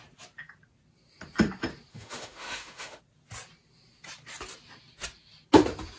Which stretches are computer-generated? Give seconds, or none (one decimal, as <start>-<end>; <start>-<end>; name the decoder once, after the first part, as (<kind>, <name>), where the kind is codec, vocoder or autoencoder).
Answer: 1.9-3.0 (autoencoder, DAC-VAE)